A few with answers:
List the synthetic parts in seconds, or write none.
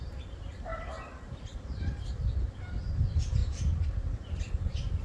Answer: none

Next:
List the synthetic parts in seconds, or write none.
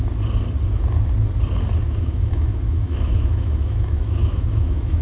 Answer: 1.8-5.0 (autoencoder, DAC-VAE)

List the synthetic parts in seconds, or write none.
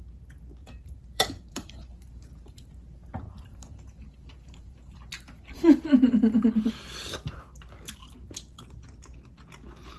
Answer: 0.6-2.7 (vocoder, BigVGAN v2); 3.5-6.7; 8.0-8.6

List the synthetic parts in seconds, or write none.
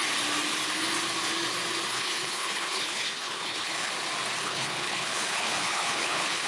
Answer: 1.9-3.9 (codec, HILCodec); 4.4-6.5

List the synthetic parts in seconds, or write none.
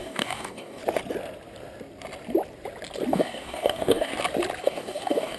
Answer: 0.0-0.8 (codec, DAC); 3.1-4.1; 4.6-5.4